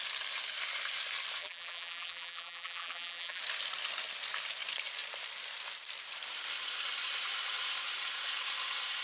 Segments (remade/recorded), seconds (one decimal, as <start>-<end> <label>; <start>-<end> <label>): 0.0-1.4 recorded; 1.4-3.4 remade; 3.4-9.0 recorded